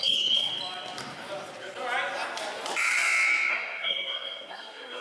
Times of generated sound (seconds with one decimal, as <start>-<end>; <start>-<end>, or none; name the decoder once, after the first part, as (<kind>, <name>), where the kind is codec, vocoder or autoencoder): 0.0-0.5 (codec, SNAC); 3.5-5.0